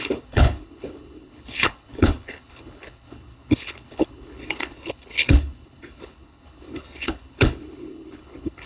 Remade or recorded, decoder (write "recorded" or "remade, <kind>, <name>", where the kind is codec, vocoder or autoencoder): remade, codec, HILCodec